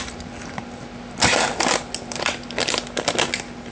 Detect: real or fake real